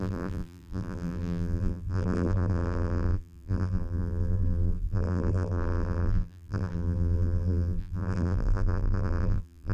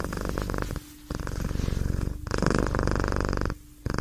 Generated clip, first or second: first